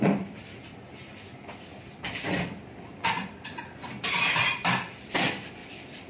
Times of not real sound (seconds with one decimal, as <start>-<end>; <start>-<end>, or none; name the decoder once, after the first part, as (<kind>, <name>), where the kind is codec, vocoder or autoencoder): 0.0-0.5 (vocoder, BigVGAN v2); 4.1-6.1